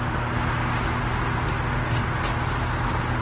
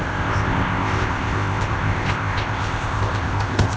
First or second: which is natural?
first